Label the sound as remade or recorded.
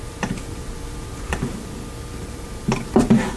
remade